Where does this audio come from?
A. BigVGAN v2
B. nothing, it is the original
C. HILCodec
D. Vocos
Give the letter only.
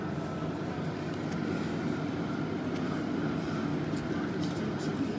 B